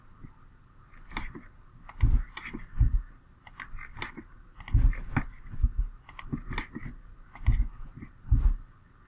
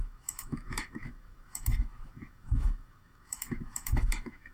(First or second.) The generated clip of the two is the second